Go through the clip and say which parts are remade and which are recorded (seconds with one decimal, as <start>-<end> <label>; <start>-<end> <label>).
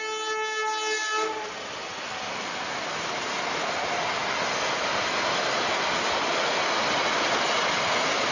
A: 0.0-8.3 recorded